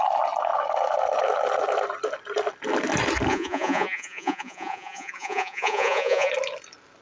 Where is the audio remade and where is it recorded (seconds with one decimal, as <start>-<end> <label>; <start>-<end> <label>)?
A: 0.0-3.3 recorded; 3.3-6.3 remade; 6.3-7.0 recorded